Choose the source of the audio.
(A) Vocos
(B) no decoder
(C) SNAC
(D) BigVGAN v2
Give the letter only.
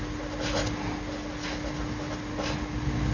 B